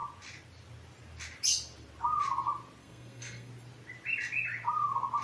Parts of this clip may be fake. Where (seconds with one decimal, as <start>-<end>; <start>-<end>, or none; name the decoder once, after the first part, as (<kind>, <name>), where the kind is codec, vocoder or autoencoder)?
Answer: 2.8-3.5 (codec, SNAC)